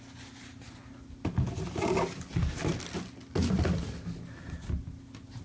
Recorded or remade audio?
recorded